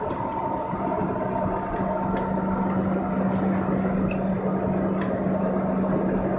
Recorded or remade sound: recorded